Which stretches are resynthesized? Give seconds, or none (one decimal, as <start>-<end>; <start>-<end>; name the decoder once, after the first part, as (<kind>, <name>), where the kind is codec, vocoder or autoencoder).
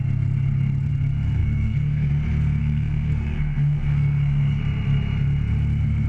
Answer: 1.4-2.1 (codec, SNAC); 2.6-4.6